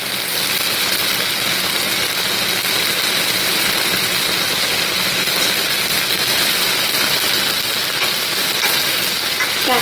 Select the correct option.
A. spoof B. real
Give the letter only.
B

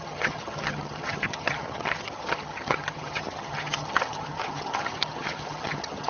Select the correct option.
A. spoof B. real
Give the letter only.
A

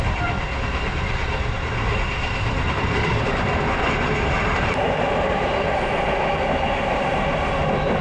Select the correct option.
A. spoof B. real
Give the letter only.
B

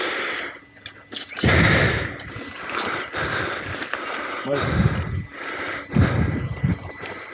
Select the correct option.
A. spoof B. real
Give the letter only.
B